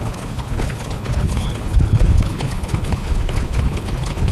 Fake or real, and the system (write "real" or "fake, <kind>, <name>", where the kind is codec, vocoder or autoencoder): fake, codec, HILCodec